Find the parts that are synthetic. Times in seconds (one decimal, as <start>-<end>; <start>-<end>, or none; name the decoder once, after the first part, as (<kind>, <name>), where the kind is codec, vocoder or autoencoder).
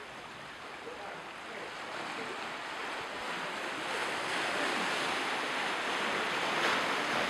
none